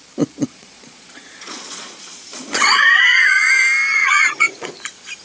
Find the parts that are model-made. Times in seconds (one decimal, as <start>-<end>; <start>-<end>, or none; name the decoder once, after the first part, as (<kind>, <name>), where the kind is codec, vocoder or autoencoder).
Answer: 0.4-3.5 (vocoder, Vocos); 4.0-4.7